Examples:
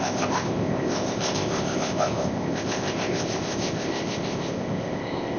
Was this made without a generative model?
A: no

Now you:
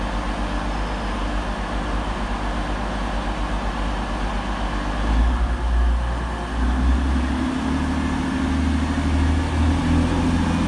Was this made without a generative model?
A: yes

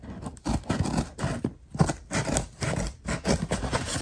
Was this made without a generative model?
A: yes